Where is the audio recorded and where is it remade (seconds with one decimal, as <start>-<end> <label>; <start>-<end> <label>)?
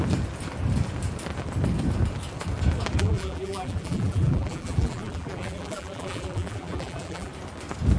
0.0-3.0 recorded; 3.0-7.3 remade; 7.3-8.0 recorded